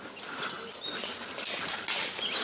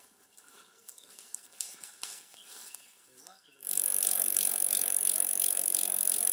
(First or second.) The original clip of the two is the first